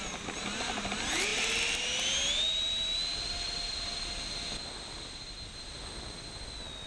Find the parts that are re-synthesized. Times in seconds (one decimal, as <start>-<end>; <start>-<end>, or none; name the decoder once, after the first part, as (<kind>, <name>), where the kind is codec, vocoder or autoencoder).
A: none